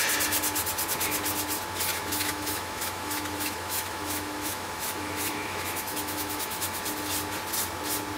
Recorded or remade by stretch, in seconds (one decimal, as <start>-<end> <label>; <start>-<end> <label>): 0.0-1.9 recorded; 1.9-6.8 remade; 6.8-8.2 recorded